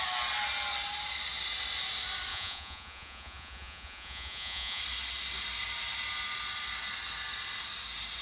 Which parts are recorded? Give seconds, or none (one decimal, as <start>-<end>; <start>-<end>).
0.0-2.3; 4.8-8.2